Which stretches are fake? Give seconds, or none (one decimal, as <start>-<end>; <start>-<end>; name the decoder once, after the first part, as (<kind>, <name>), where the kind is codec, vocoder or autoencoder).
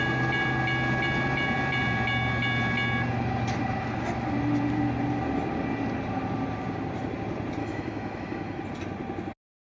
7.6-8.6 (autoencoder, DAC-VAE)